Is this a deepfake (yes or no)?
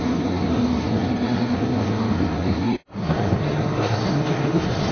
yes